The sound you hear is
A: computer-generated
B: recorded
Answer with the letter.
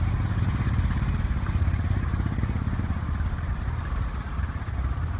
B